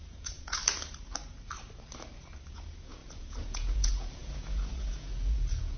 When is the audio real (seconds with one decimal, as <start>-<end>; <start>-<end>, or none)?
0.6-2.5